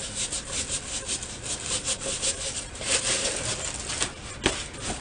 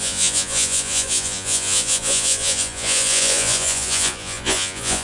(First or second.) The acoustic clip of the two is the first